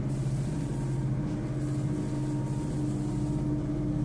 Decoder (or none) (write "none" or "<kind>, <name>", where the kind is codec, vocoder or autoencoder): none